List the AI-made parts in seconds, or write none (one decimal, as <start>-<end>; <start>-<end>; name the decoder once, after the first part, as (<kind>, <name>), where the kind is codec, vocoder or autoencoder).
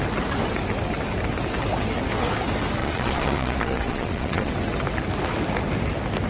2.8-4.5 (vocoder, Vocos)